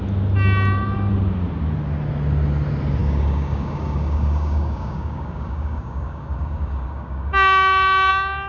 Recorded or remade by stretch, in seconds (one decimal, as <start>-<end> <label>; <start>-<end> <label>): 0.0-3.0 recorded; 3.0-8.1 remade; 8.1-8.5 recorded